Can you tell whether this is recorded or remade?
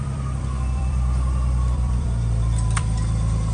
remade